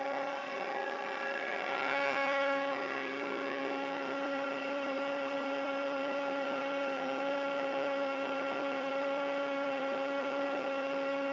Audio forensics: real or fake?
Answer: fake